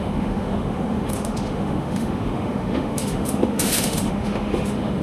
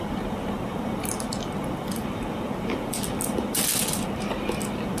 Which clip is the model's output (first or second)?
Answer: first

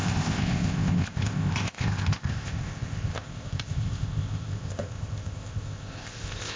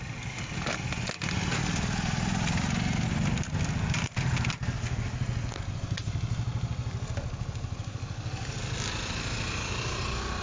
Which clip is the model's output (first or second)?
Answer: first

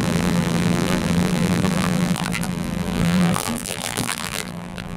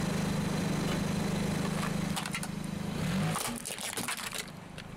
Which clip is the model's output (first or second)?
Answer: first